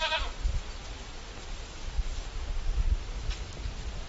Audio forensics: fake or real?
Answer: real